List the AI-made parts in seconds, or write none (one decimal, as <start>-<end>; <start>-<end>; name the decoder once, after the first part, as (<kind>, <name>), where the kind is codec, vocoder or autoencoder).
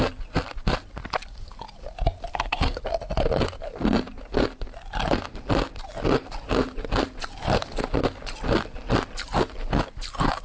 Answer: 2.3-2.8 (codec, SNAC)